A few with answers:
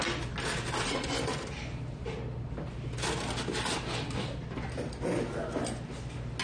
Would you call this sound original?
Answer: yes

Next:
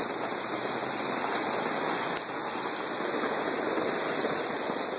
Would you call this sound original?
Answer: yes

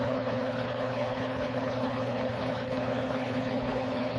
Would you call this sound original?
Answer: no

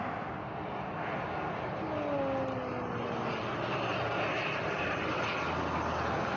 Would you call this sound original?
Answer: yes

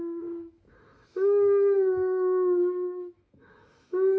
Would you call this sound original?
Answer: no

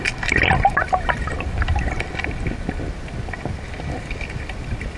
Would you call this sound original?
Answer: yes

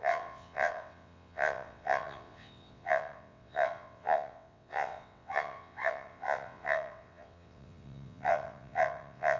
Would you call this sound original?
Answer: no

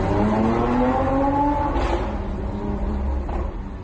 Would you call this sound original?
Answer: yes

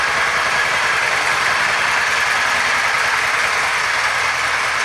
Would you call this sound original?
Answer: yes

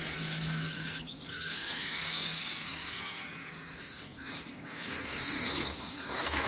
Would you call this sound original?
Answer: no